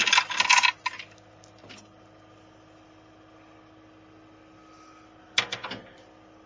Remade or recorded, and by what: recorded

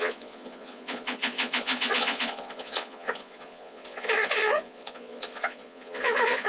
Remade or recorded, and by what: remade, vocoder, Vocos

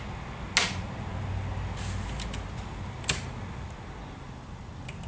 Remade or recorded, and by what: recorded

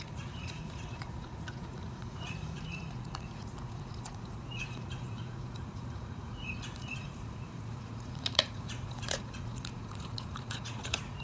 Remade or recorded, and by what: remade, vocoder, Vocos